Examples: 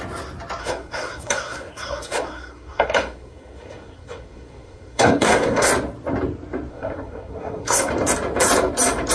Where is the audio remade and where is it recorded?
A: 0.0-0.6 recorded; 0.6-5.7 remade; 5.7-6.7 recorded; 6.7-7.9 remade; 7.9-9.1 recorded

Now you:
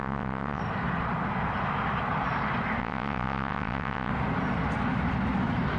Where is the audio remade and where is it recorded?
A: 0.0-0.6 remade; 0.6-2.8 recorded; 2.8-4.1 remade; 4.1-5.8 recorded

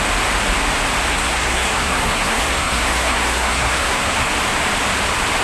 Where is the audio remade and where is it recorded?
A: 0.0-1.1 recorded; 1.1-4.3 remade; 4.3-5.4 recorded

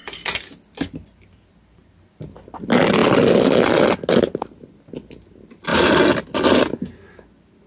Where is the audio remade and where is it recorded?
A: 0.0-7.7 recorded

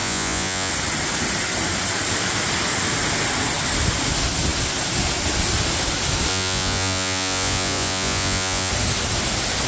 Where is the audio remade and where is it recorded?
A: 0.0-0.7 remade; 0.7-6.3 recorded; 6.3-8.7 remade; 8.7-9.7 recorded